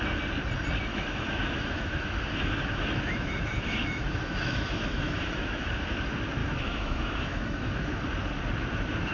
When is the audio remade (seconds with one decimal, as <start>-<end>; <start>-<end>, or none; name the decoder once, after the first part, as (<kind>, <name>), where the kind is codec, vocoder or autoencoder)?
0.9-5.8 (autoencoder, DAC-VAE); 6.4-8.0

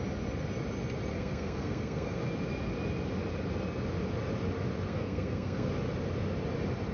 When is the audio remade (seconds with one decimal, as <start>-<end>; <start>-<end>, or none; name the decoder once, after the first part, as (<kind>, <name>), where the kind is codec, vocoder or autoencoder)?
1.1-2.2 (codec, SNAC); 4.9-5.7

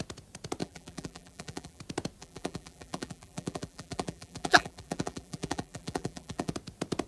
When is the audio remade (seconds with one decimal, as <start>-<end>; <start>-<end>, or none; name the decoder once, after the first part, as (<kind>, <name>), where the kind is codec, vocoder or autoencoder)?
0.6-1.8 (vocoder, BigVGAN v2); 2.2-6.5

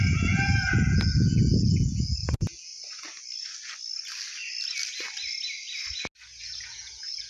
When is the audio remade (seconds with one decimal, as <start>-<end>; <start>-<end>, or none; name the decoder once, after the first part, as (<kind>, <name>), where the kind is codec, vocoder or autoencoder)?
0.0-2.7 (vocoder, Vocos); 6.4-7.3

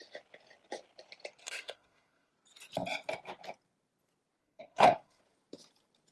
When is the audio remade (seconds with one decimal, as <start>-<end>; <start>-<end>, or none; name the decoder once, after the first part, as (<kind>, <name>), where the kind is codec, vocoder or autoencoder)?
1.4-2.3 (codec, SNAC); 4.4-5.2

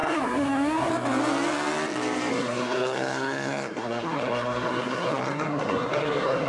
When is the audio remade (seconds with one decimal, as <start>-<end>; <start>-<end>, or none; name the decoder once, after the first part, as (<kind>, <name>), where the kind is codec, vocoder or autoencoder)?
0.0-0.9 (codec, SNAC); 2.3-6.5